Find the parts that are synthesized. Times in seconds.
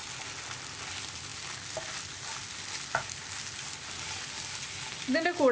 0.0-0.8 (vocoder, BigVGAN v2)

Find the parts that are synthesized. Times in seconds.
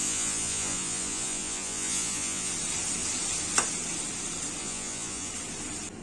0.0-2.5 (vocoder, Vocos); 4.6-5.3